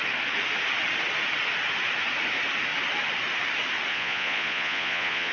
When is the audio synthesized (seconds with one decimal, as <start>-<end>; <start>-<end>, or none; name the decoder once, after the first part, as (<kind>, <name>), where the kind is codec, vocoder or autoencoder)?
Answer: 3.9-5.3 (vocoder, Vocos)